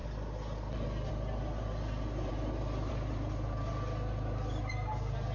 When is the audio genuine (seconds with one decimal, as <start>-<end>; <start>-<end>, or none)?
0.0-5.3